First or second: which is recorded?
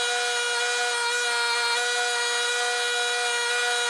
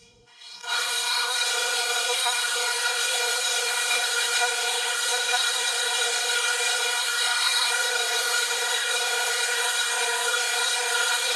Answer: first